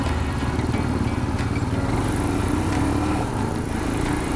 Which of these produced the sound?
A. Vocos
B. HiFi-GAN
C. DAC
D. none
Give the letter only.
D